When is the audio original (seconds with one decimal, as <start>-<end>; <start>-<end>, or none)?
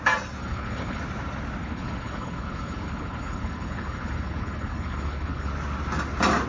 0.0-0.4; 1.0-1.6; 5.5-6.5